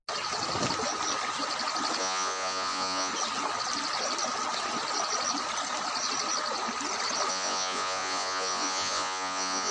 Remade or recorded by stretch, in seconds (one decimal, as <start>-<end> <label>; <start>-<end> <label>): 0.0-2.0 recorded; 2.0-3.1 remade; 3.1-7.3 recorded; 7.3-9.7 remade